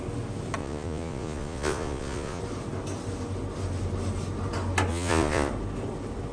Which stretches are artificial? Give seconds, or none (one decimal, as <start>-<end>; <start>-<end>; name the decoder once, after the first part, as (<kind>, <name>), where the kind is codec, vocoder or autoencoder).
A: 0.6-2.4 (vocoder, Vocos); 4.9-5.5